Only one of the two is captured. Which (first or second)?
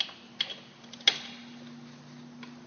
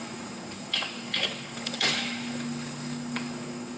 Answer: first